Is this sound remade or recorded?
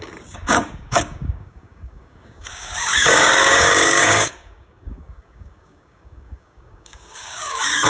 remade